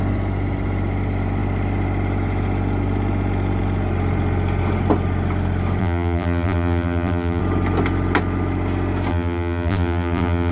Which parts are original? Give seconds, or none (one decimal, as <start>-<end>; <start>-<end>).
0.0-5.8; 7.4-9.1